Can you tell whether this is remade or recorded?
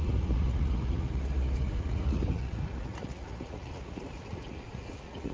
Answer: remade